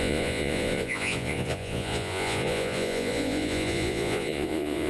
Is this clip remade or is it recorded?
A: remade